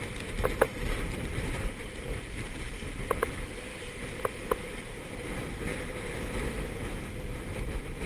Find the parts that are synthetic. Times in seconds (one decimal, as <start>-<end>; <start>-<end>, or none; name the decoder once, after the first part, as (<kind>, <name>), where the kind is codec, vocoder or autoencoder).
0.7-1.6 (vocoder, BigVGAN v2)